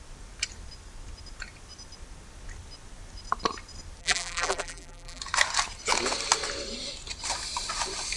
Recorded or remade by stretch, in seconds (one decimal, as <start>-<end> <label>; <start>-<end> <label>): 0.0-4.0 recorded; 4.0-5.2 remade; 5.2-8.2 recorded